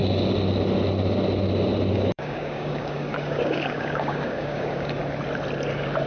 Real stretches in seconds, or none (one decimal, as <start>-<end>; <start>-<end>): 0.0-1.9; 5.0-6.1